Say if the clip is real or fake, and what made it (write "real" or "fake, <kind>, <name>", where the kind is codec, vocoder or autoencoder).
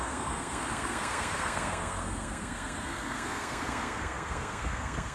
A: fake, codec, SNAC